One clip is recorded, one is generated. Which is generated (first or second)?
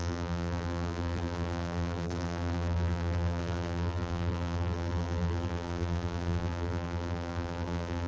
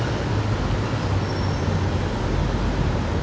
first